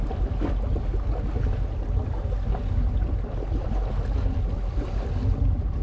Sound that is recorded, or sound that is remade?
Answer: recorded